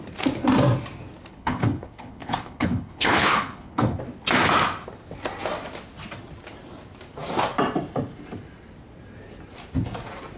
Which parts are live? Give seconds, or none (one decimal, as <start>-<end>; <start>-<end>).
0.0-1.3; 4.0-10.4